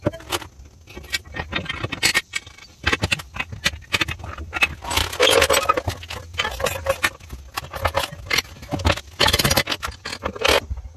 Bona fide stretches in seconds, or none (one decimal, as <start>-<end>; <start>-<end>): 0.0-2.1; 2.9-11.0